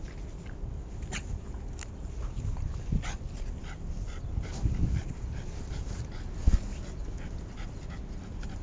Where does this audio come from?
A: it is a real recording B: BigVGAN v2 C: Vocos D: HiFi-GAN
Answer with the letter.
A